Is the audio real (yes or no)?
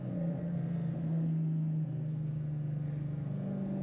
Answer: no